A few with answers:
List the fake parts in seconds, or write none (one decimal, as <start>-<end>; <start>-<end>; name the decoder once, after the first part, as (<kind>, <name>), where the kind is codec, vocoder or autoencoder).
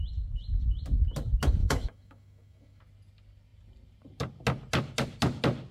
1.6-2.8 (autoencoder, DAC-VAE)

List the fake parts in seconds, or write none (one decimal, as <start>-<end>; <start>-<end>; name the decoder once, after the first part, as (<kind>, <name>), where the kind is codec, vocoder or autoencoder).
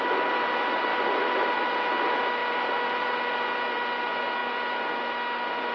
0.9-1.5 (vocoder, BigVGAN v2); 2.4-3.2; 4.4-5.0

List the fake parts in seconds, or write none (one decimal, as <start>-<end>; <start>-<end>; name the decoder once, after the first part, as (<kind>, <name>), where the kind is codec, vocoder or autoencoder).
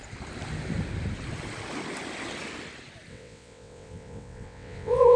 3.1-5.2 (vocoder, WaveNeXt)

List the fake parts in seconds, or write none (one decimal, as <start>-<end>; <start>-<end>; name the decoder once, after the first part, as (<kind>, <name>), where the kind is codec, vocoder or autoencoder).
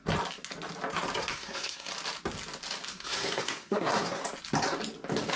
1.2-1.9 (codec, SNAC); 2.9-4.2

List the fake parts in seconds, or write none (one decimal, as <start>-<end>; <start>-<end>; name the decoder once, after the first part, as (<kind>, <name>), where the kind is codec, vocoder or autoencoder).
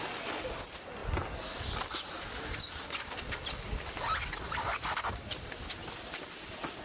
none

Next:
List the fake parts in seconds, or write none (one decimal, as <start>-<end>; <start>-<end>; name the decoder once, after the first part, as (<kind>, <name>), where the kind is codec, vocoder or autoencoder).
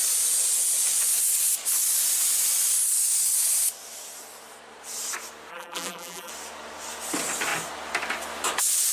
5.5-6.3 (vocoder, BigVGAN v2)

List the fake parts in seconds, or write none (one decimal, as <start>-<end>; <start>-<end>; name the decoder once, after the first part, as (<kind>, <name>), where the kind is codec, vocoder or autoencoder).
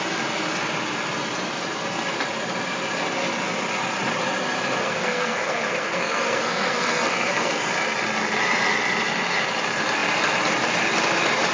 4.8-7.7 (codec, SNAC)